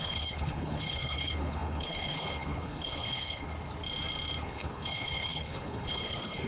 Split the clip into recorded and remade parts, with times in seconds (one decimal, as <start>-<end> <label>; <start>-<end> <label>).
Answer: 0.0-3.5 remade; 3.5-4.4 recorded; 4.4-6.5 remade